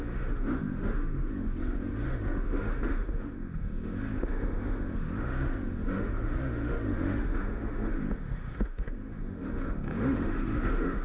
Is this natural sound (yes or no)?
no